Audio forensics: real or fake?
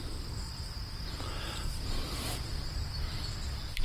real